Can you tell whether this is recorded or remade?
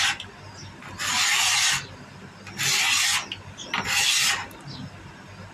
recorded